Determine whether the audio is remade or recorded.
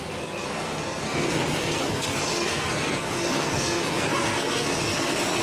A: remade